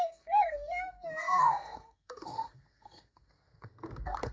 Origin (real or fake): fake